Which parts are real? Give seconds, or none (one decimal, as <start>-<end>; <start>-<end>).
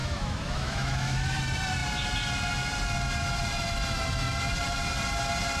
1.4-5.6